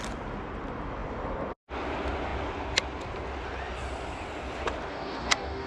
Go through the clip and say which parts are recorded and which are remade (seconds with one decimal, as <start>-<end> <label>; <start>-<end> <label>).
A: 0.0-4.9 recorded; 4.9-5.7 remade